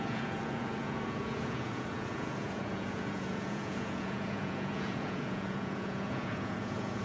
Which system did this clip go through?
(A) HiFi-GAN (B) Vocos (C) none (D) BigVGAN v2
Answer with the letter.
B